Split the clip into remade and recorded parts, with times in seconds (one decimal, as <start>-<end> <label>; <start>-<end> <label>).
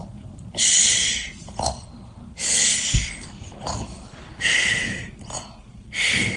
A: 0.0-1.0 remade; 1.0-2.8 recorded; 2.8-5.1 remade; 5.1-6.4 recorded